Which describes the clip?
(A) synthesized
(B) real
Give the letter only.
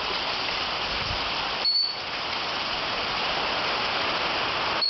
B